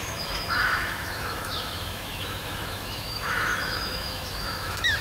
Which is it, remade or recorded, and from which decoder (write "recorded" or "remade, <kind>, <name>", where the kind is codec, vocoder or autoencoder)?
remade, autoencoder, DAC-VAE